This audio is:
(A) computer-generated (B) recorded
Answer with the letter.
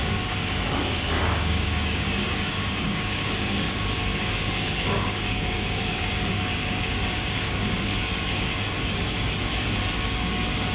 A